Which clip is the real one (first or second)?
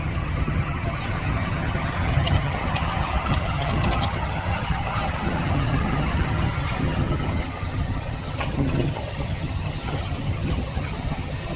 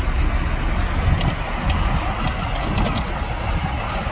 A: second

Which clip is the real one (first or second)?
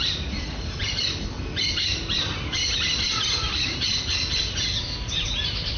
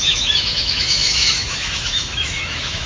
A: first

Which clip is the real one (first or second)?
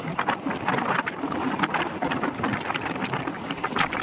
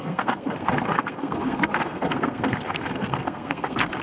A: first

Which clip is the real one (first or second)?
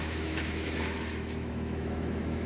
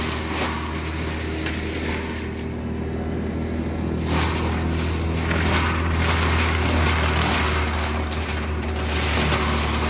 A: second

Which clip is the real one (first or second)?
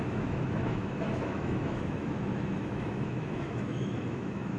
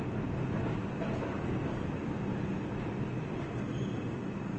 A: second